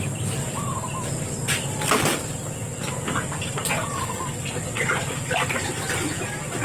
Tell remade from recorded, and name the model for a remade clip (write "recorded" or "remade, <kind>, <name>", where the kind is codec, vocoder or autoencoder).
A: recorded